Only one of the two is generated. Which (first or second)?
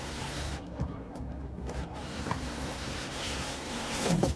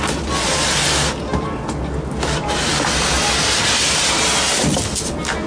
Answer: first